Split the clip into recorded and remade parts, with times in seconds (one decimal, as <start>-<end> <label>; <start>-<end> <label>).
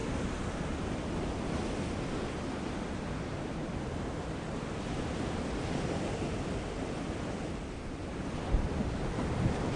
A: 0.0-9.8 recorded